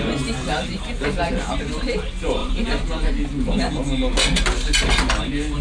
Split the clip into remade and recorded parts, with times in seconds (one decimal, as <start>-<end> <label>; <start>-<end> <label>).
0.0-2.4 recorded; 2.4-3.1 remade; 3.1-5.6 recorded